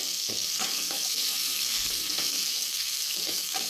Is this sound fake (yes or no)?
yes